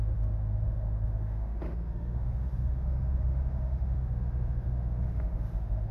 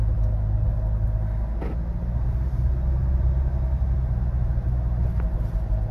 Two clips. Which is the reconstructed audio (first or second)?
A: first